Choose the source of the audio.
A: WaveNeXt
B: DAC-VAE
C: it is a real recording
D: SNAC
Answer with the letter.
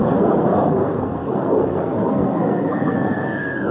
D